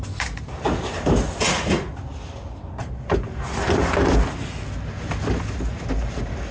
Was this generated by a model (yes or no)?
no